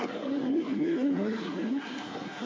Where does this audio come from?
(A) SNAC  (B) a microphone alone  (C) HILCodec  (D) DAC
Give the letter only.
A